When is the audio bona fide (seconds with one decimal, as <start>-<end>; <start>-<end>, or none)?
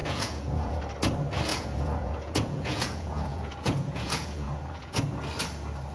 0.8-1.5; 5.0-5.9